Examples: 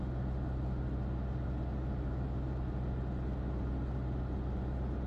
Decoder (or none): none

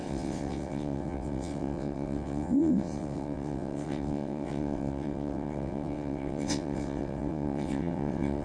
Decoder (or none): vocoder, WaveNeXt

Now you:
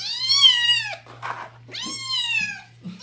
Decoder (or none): none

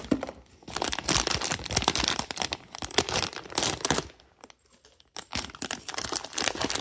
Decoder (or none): none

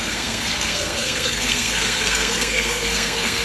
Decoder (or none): codec, SNAC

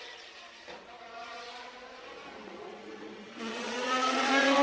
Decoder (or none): vocoder, Vocos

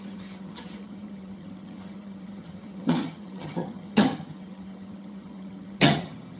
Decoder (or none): vocoder, HiFi-GAN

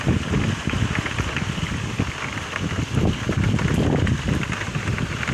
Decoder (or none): none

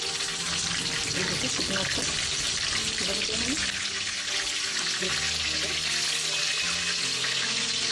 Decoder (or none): none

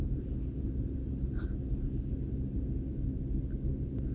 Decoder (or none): none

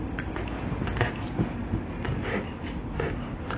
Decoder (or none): none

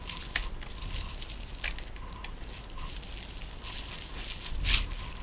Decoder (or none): none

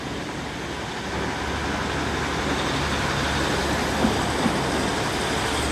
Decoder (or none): none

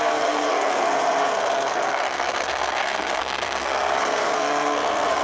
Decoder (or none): codec, SNAC